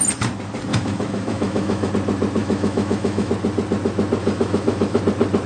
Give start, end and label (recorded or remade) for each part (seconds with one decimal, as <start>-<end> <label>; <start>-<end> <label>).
0.0-0.7 recorded; 0.7-1.9 remade; 1.9-2.4 recorded; 2.4-3.3 remade; 3.3-4.2 recorded; 4.2-5.0 remade; 5.0-5.5 recorded